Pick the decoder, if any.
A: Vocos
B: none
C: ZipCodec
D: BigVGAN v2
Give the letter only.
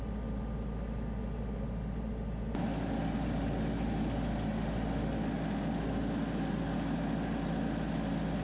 B